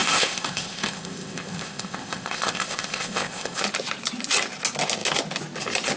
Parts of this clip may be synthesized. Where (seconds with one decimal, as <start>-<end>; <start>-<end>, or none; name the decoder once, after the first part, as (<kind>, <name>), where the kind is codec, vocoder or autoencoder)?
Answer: 0.0-3.6 (codec, ZipCodec)